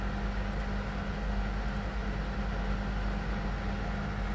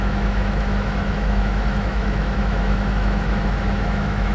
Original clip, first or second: first